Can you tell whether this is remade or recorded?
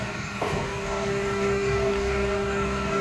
remade